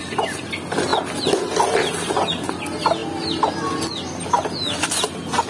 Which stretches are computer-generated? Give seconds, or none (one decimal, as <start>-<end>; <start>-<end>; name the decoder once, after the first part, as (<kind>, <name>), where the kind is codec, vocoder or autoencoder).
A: none